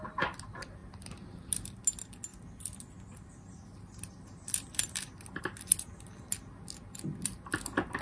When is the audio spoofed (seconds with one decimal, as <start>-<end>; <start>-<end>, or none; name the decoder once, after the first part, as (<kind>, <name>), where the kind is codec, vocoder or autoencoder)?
0.8-1.8 (vocoder, BigVGAN v2)

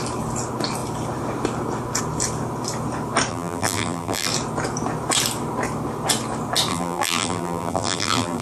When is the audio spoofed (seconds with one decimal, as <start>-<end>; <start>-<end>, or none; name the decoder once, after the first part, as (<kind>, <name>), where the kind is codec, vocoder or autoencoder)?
3.3-4.3 (vocoder, BigVGAN v2); 6.7-8.4

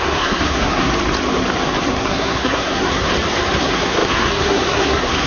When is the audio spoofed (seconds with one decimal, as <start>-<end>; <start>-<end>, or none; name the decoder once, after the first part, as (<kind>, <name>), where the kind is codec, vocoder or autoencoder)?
0.0-0.9 (codec, SNAC); 1.8-3.1; 3.6-5.3

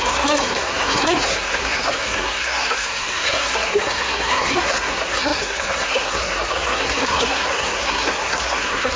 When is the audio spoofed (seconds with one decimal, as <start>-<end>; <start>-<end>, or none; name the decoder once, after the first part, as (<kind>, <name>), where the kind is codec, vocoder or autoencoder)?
0.0-9.0 (codec, SNAC)

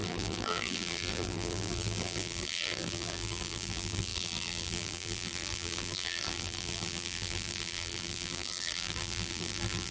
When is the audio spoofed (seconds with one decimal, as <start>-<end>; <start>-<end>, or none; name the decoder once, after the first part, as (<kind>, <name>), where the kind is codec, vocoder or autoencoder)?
0.0-9.9 (vocoder, BigVGAN v2)

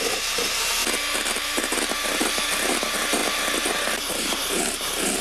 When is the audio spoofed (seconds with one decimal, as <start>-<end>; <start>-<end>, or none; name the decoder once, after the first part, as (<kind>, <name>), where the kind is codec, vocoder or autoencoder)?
0.0-0.8 (vocoder, BigVGAN v2); 1.3-3.2; 4.0-5.2